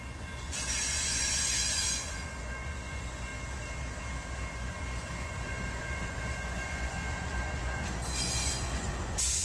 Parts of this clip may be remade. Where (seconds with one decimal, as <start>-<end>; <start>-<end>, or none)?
0.0-3.3; 4.5-9.4